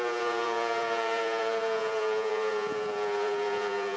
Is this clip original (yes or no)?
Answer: no